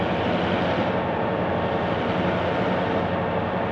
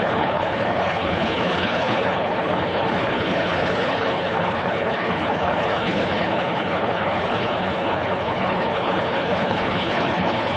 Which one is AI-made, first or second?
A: second